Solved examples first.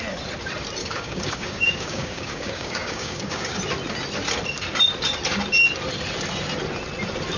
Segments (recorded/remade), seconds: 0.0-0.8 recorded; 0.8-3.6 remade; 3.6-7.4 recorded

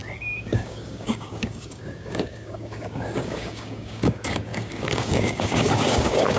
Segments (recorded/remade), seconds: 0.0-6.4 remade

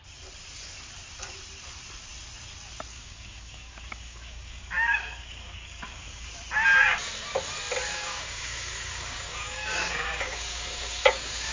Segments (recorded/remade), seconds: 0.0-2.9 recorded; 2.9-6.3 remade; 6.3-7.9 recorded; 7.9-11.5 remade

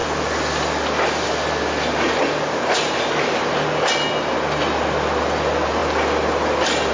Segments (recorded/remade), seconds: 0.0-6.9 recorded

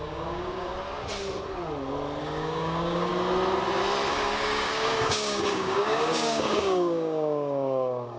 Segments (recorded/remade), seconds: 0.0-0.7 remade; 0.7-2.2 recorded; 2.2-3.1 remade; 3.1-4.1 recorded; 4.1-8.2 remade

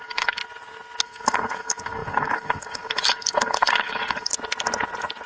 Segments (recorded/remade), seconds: 0.0-0.4 remade; 0.4-1.0 recorded; 1.0-4.3 remade; 4.3-5.3 recorded

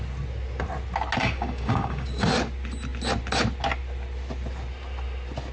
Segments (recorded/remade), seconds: 0.0-1.2 recorded; 1.2-2.3 remade; 2.3-5.5 recorded